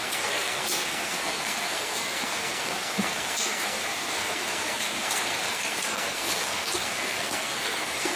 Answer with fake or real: fake